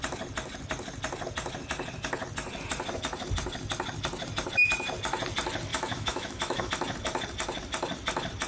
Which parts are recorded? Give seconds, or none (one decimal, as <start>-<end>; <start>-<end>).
0.0-5.7; 6.7-8.5